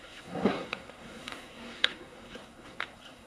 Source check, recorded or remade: remade